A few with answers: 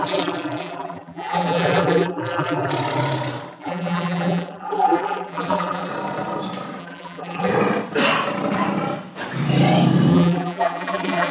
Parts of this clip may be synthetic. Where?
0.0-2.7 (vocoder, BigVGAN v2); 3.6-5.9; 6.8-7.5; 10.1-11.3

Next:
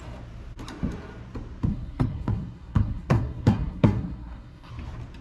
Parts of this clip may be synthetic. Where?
1.7-4.7 (codec, SNAC)

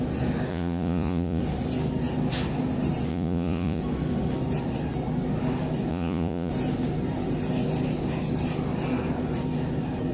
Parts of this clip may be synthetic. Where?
0.5-1.4 (vocoder, Vocos); 3.1-3.8; 5.9-6.5

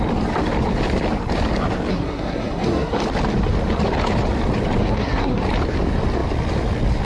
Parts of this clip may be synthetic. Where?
1.9-3.0 (codec, SNAC); 4.8-5.4

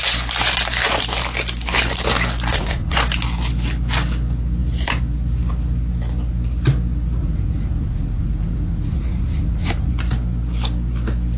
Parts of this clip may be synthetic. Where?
2.5-3.0 (vocoder, Vocos); 7.2-9.9

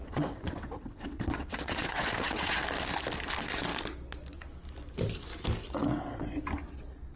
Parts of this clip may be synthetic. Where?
0.0-2.6 (vocoder, WaveNeXt); 5.8-6.3